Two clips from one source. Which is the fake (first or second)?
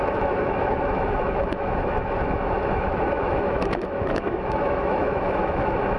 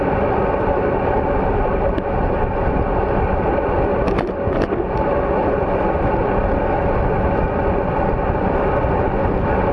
first